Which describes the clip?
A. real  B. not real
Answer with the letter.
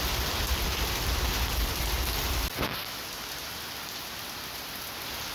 A